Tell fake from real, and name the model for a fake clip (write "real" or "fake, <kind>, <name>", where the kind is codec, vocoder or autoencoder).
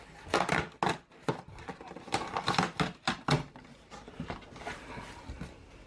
real